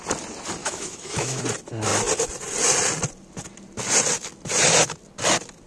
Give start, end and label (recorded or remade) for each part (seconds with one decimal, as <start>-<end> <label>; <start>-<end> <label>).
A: 0.0-0.6 recorded; 0.6-1.4 remade; 1.4-5.7 recorded